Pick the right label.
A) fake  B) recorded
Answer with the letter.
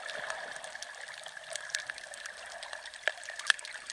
B